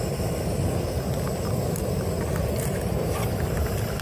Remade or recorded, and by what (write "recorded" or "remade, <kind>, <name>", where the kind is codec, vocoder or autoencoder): recorded